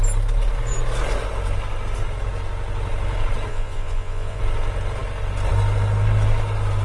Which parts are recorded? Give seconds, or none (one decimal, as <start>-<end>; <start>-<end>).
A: 0.0-3.5; 4.4-6.8